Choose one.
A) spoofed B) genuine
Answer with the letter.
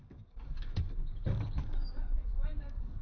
A